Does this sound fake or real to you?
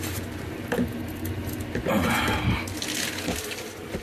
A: real